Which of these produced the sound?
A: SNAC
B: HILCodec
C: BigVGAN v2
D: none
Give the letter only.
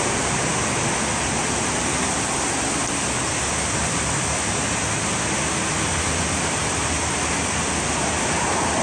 D